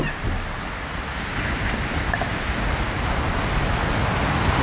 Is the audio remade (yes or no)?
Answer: no